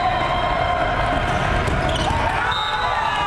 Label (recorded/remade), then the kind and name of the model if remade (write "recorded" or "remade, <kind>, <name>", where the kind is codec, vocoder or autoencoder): recorded